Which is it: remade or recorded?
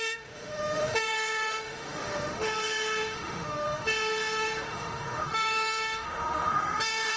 remade